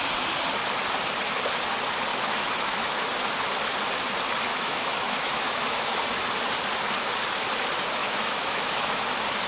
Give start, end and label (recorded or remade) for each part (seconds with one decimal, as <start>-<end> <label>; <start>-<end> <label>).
0.0-2.1 recorded; 2.1-2.9 remade; 2.9-4.5 recorded; 4.5-6.0 remade; 6.0-8.0 recorded; 8.0-9.0 remade; 9.0-9.5 recorded